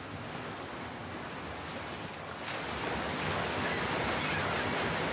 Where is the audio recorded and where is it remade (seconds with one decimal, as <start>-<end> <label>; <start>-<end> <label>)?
0.0-5.1 recorded